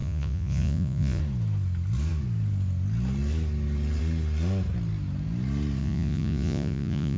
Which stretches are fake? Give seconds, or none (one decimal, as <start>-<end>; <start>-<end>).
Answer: 0.0-1.2; 5.8-7.2